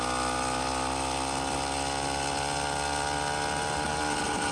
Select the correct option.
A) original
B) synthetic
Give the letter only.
A